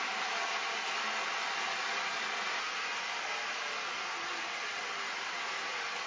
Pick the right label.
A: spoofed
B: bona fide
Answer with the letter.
B